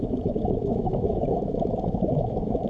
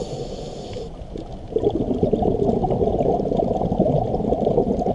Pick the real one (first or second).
second